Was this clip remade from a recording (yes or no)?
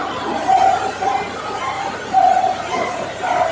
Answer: no